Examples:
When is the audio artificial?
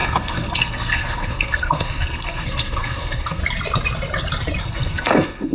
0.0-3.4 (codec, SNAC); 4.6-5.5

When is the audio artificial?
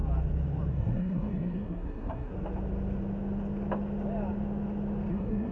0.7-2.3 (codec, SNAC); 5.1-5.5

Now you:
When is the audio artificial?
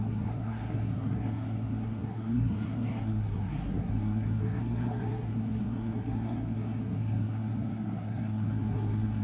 0.0-9.2 (codec, SNAC)